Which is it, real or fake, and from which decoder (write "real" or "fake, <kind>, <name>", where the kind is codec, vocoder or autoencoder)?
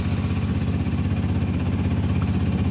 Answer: real